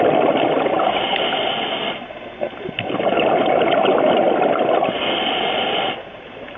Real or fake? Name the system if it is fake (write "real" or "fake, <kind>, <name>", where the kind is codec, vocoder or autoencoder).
real